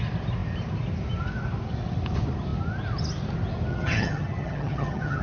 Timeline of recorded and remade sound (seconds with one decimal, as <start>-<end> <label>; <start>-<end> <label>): 0.0-3.7 recorded; 3.7-5.2 remade